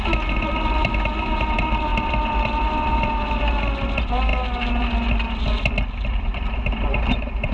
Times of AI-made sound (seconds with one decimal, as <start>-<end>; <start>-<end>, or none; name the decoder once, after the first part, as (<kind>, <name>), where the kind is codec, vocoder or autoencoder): none